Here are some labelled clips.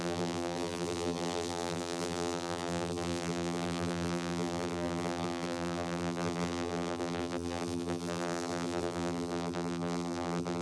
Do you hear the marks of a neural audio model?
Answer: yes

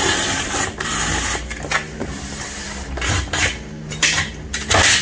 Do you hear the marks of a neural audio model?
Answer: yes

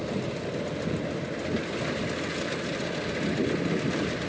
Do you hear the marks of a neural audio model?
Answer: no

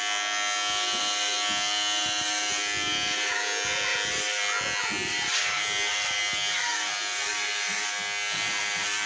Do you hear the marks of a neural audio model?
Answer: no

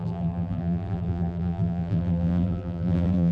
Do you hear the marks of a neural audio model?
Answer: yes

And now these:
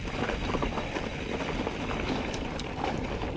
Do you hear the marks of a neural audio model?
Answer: yes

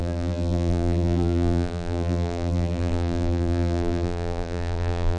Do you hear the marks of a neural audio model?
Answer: yes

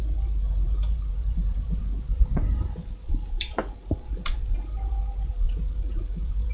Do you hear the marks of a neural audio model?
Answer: yes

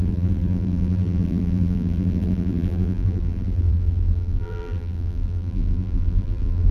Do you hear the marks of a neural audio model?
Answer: yes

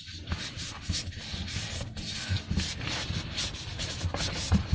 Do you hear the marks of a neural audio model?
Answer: no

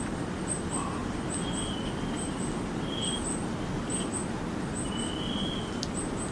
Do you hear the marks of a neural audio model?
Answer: no